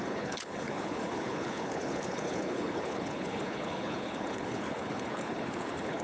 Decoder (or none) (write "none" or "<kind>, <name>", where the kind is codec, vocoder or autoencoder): codec, HILCodec